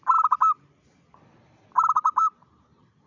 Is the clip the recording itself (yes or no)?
no